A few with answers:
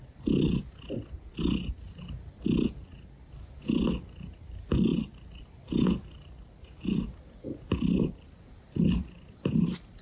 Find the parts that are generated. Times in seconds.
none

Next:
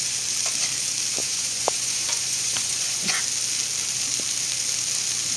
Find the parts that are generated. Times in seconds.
1.2-3.2 (vocoder, Vocos)

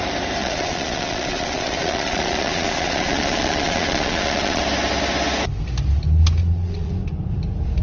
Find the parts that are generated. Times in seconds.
0.4-4.6 (vocoder, Vocos); 6.4-6.9

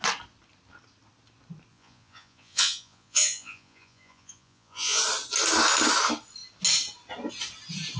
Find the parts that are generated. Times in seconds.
1.7-5.0 (vocoder, Vocos)

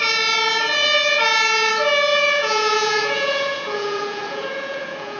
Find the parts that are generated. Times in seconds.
2.1-5.2 (vocoder, Vocos)